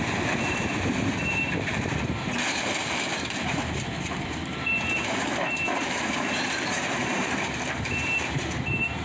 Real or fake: fake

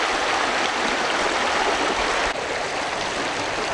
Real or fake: real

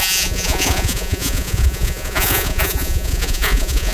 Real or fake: fake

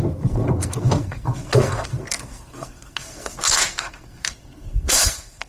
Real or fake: fake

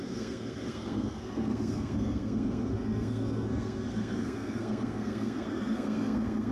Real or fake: fake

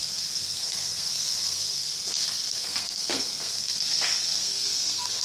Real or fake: fake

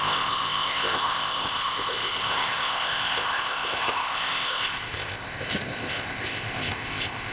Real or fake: fake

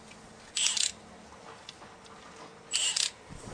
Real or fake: real